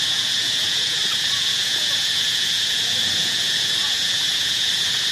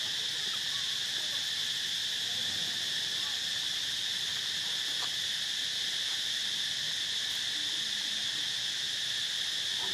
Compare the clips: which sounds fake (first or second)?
first